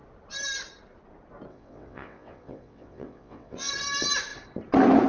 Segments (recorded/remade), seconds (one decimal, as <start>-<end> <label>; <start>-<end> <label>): 0.0-1.5 recorded; 1.5-3.7 remade; 3.7-5.1 recorded